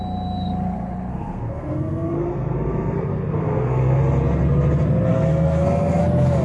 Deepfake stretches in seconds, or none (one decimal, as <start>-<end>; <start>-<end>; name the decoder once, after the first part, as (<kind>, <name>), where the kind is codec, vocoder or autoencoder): 1.1-4.0 (codec, SNAC); 5.1-6.0